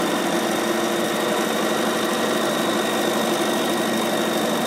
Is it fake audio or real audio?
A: real